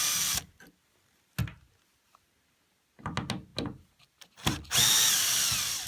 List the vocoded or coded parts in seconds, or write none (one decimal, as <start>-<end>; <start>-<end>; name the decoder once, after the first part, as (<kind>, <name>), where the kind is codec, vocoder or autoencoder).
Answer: none

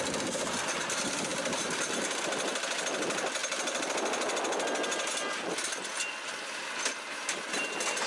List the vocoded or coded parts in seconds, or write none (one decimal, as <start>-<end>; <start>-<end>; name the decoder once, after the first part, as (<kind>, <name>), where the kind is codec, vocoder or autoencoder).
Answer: 1.3-2.2 (vocoder, BigVGAN v2)

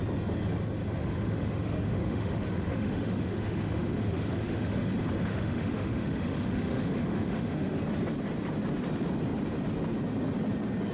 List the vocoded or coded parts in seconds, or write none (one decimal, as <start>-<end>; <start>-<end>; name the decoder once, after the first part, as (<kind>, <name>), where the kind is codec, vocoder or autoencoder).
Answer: 1.0-4.8 (autoencoder, DAC-VAE); 5.3-7.8

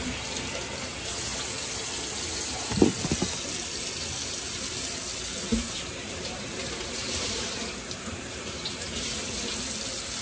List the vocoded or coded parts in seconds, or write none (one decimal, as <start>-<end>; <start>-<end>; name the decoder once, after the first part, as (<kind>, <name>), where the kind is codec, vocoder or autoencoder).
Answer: 5.5-9.2 (vocoder, BigVGAN v2)

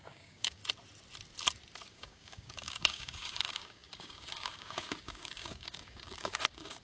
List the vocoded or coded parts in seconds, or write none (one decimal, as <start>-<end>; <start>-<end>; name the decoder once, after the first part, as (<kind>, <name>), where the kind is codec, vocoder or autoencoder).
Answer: 0.0-0.6 (codec, DAC); 1.9-6.8